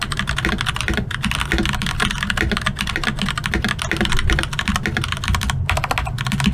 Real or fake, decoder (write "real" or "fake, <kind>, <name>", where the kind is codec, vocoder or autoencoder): real